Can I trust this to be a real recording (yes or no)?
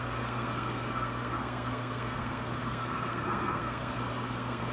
no